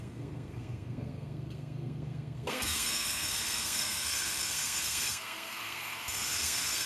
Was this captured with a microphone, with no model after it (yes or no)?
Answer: no